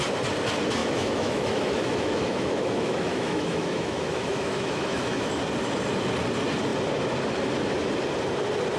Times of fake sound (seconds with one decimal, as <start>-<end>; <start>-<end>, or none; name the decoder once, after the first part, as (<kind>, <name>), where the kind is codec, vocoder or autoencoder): 0.8-5.4 (autoencoder, DAC-VAE)